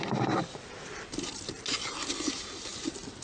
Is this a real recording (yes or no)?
yes